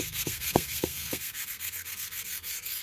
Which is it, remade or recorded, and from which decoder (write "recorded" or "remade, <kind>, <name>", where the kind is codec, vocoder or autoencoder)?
remade, codec, SNAC